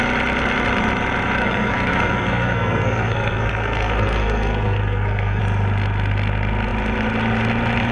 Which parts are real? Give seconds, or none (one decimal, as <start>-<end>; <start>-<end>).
0.0-1.4; 5.4-7.9